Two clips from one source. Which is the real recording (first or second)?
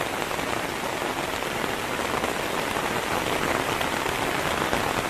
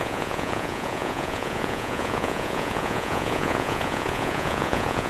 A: first